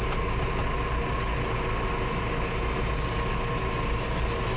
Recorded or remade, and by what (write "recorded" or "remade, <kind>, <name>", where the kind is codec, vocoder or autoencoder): recorded